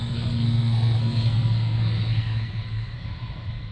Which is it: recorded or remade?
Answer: remade